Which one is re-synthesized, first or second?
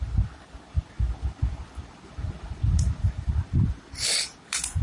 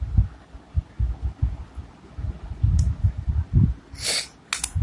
first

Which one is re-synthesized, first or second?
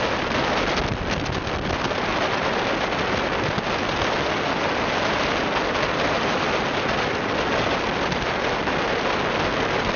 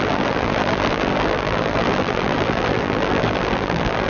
second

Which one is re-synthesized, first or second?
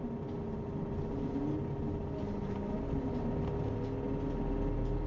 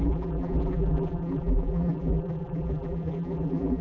second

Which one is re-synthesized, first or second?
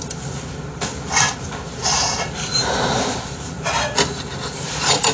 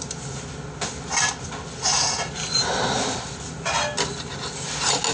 first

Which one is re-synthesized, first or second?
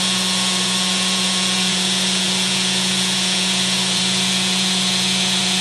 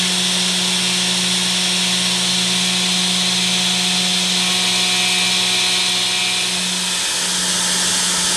first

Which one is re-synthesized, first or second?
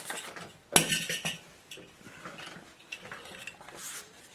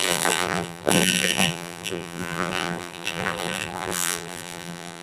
second